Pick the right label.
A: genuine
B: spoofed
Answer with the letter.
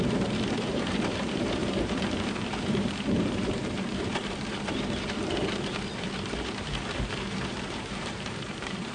B